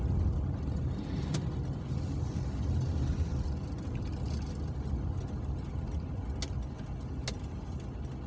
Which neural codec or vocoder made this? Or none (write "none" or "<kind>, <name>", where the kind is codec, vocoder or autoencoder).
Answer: none